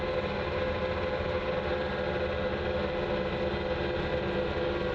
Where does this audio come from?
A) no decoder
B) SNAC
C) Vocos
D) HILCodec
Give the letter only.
A